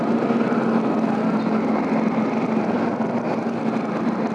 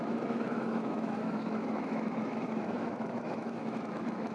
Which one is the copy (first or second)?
second